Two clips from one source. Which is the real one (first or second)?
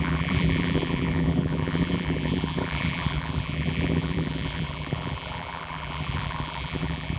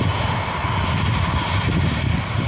second